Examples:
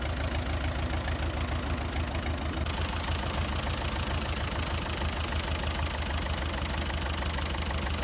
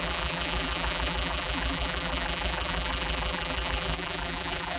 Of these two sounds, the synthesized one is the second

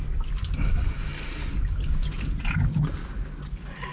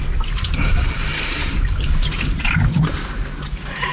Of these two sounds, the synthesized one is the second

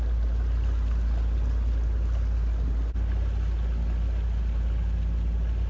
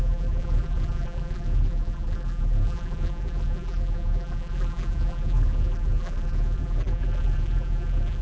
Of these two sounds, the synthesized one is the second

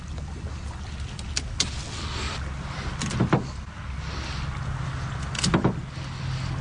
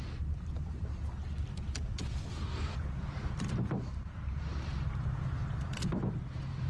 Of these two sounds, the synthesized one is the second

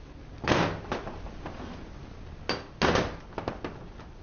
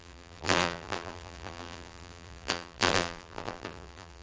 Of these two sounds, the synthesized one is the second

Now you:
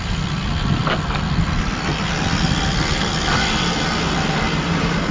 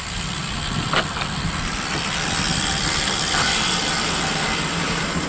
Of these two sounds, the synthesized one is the second